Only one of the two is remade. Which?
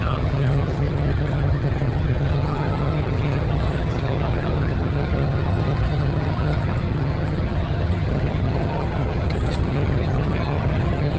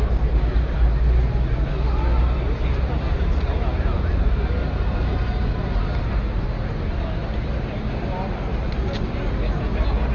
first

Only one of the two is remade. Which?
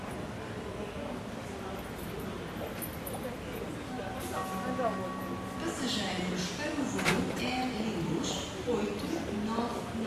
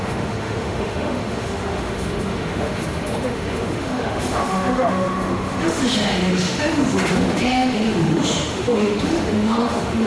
second